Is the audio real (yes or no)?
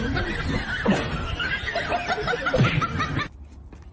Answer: yes